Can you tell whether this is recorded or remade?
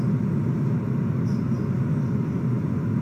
recorded